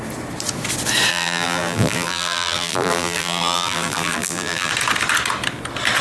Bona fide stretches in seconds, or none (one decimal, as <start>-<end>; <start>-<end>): 0.0-1.1; 4.7-6.0